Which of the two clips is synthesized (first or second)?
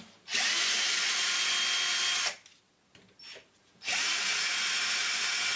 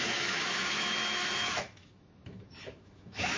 second